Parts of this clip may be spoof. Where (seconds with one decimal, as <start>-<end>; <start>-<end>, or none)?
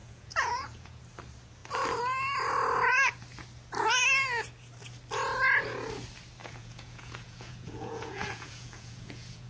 0.0-1.0; 6.4-9.5